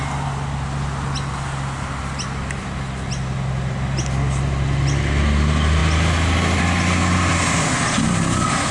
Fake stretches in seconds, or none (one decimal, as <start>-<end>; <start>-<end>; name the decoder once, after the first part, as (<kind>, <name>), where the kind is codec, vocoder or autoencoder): none